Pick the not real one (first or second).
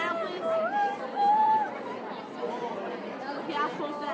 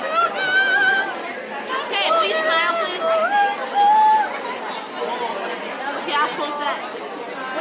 first